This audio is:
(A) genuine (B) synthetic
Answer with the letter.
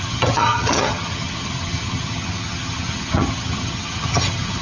B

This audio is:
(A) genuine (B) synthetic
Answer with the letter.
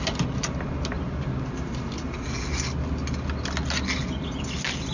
A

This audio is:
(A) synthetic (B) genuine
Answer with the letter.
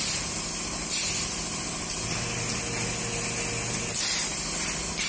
B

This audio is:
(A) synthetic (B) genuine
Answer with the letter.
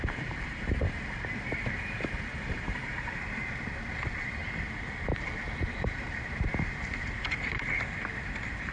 A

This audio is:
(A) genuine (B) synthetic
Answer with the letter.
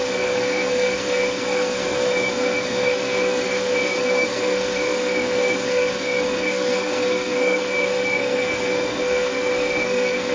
B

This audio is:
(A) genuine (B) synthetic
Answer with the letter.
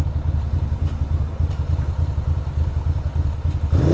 A